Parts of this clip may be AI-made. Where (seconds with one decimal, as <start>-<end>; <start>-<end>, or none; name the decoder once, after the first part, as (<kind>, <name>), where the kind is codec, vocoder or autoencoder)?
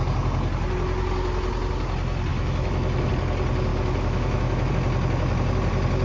2.3-3.1 (autoencoder, DAC-VAE); 3.7-4.7